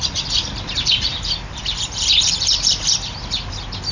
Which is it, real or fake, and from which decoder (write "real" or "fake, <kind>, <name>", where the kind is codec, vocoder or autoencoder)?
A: fake, vocoder, BigVGAN v2